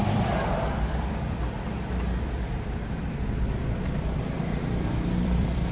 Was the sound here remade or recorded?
remade